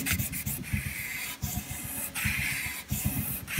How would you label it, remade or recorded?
recorded